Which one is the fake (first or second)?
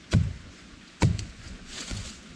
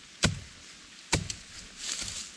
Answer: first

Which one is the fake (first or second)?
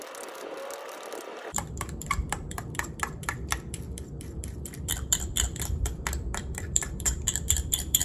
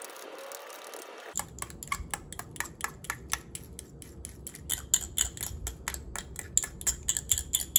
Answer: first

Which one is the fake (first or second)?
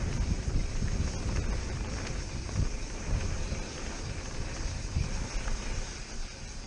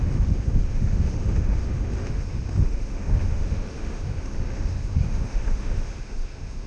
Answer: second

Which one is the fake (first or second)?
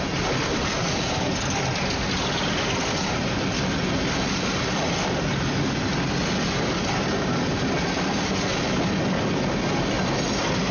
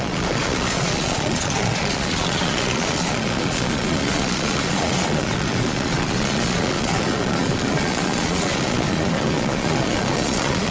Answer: second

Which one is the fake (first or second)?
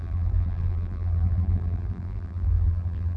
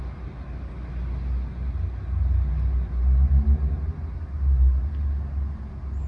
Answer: first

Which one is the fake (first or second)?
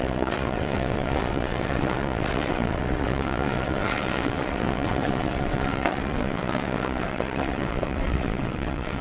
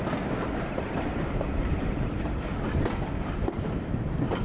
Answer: first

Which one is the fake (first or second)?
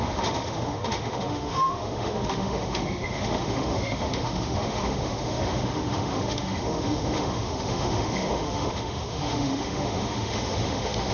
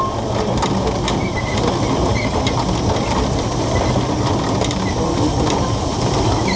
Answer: first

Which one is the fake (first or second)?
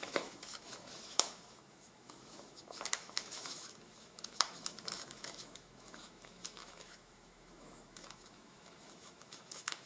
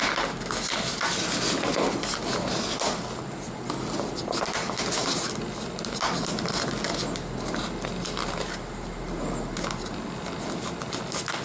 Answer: first